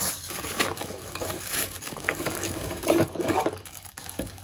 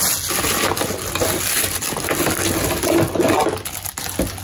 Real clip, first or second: second